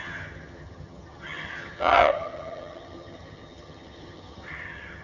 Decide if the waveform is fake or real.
fake